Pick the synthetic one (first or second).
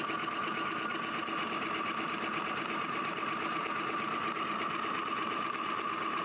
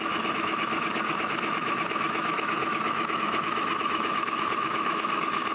second